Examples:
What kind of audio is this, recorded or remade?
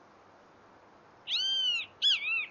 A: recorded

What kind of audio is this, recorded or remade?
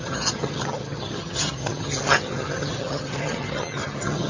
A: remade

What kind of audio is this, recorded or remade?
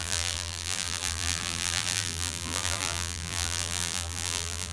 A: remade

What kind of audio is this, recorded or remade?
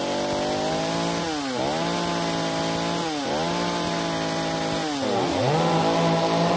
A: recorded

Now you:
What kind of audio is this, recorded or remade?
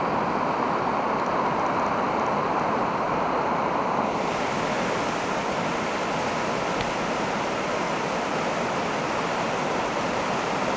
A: recorded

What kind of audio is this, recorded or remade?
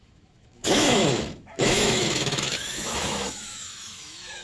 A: remade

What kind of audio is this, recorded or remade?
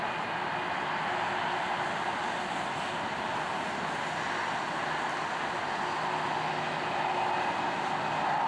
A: recorded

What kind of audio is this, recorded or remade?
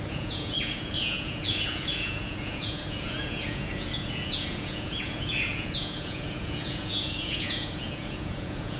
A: remade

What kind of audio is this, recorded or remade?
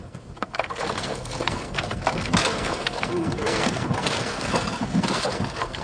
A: remade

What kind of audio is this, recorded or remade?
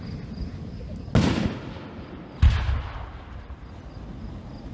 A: recorded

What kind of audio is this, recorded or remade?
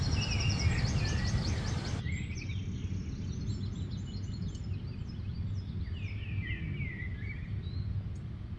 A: recorded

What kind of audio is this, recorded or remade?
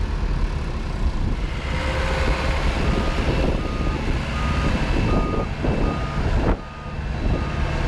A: recorded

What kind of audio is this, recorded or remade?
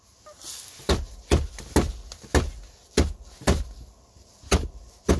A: recorded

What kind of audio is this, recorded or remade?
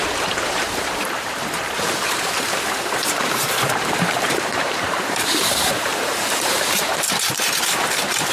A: remade